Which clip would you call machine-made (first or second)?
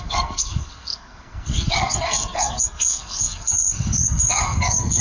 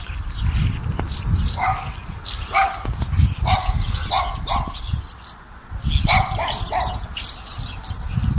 first